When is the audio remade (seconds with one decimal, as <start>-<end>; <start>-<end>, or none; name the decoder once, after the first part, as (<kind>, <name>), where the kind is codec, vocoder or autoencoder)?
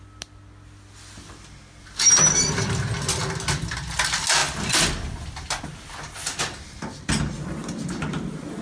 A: none